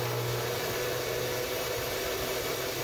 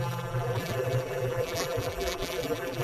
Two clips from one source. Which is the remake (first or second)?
second